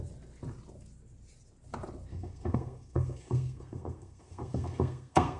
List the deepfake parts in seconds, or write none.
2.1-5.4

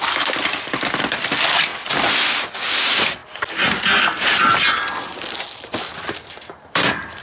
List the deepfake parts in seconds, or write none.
0.0-1.7; 2.5-3.2; 5.7-7.2